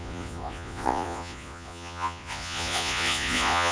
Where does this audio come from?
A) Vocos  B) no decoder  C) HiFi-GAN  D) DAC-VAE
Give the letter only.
A